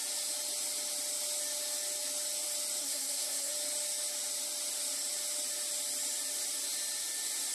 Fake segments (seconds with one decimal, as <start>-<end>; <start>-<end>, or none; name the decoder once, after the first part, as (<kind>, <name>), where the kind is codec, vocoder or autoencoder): 2.8-3.5 (codec, SNAC)